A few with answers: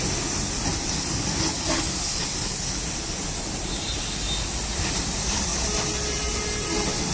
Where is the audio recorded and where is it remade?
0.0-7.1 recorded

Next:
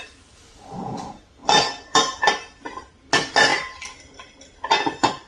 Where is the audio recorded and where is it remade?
0.0-5.3 recorded

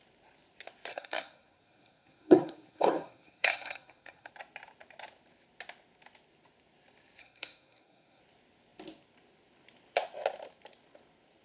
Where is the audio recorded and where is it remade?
0.0-0.9 recorded; 0.9-4.3 remade; 4.3-7.2 recorded; 7.2-8.2 remade; 8.2-11.4 recorded